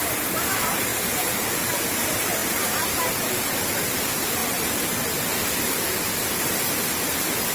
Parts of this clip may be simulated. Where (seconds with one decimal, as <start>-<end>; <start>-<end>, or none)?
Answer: 0.0-0.9; 1.7-4.4